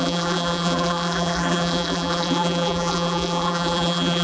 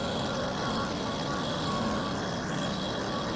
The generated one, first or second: first